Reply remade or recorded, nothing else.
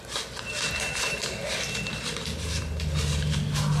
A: recorded